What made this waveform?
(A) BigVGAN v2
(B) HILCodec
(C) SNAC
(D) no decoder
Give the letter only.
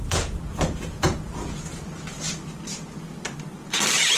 D